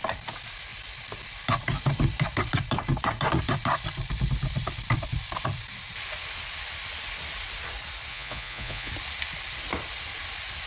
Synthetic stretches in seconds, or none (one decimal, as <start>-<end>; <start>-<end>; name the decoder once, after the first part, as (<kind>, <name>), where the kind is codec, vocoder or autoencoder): 8.1-8.9 (vocoder, Vocos)